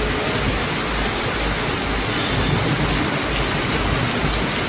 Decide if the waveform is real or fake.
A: real